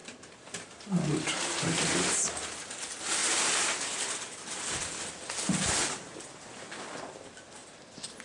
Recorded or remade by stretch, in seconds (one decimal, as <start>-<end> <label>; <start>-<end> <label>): 0.0-2.7 remade; 2.7-8.2 recorded